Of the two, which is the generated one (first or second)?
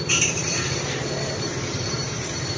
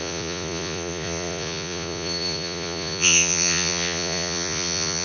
second